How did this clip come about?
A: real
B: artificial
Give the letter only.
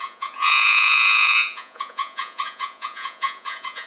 B